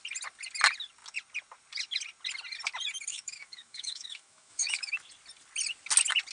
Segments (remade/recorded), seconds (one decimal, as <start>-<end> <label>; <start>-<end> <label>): 0.0-3.1 recorded; 3.1-4.9 remade; 4.9-6.3 recorded